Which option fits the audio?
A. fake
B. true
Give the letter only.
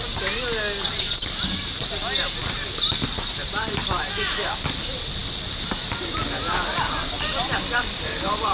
B